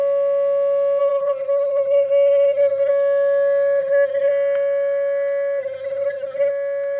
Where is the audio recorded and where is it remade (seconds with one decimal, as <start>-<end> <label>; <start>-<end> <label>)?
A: 0.0-1.0 recorded; 1.0-2.9 remade; 2.9-3.8 recorded; 3.8-4.3 remade; 4.3-5.6 recorded; 5.6-6.5 remade; 6.5-7.0 recorded